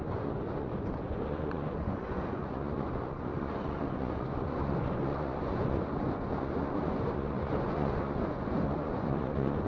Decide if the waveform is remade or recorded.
remade